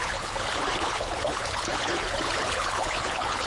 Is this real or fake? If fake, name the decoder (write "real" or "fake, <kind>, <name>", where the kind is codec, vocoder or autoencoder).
fake, codec, HILCodec